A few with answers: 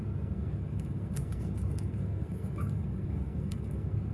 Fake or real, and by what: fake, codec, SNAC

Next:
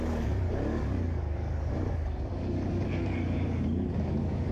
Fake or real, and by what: fake, codec, DAC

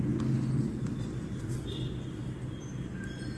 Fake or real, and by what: real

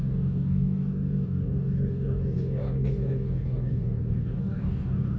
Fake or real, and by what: fake, codec, DAC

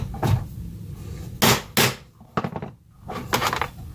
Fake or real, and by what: real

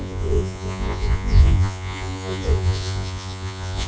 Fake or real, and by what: fake, vocoder, Vocos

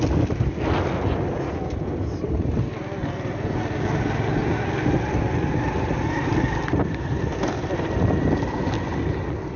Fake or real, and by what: real